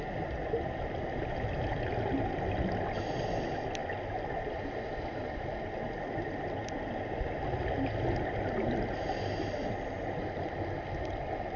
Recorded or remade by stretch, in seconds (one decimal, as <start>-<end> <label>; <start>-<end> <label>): 0.0-11.6 recorded

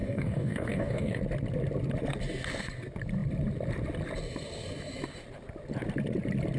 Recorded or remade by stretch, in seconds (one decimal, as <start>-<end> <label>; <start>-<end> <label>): 0.0-1.2 remade; 1.2-6.6 recorded